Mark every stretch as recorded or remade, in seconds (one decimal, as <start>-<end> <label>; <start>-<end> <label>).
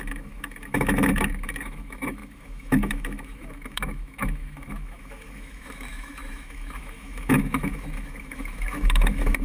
0.0-9.4 remade